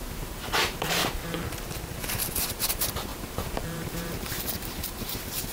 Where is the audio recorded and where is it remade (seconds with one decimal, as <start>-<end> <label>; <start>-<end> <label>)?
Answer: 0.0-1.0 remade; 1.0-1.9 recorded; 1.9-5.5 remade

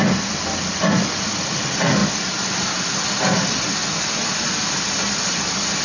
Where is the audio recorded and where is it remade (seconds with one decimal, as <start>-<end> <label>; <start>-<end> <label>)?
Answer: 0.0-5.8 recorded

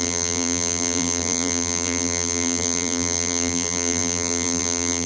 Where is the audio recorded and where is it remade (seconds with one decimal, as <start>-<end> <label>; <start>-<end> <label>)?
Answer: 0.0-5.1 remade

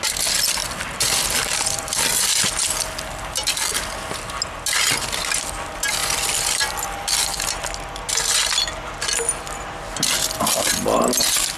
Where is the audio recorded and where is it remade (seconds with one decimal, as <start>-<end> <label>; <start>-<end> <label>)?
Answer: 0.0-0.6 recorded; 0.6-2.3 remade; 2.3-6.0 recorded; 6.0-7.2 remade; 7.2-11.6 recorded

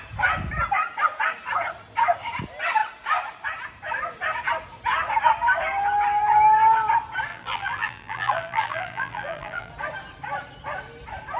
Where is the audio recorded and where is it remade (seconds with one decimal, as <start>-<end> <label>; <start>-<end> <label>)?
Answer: 0.0-7.3 recorded; 7.3-9.7 remade; 9.7-11.4 recorded